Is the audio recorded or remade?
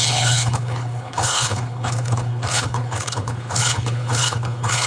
remade